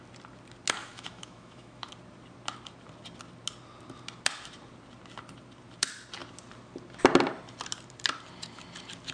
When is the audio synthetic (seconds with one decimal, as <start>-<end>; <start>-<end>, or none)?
0.8-1.9